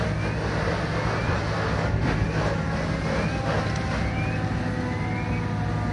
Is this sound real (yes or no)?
yes